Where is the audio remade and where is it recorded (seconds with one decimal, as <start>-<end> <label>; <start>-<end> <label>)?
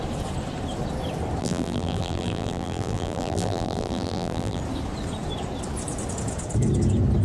0.0-1.4 recorded; 1.4-4.6 remade; 4.6-7.2 recorded